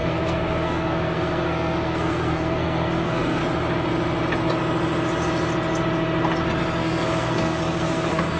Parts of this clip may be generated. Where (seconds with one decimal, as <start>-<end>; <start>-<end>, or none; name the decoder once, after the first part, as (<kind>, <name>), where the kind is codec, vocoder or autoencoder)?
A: 0.0-3.4 (codec, SNAC); 6.8-8.4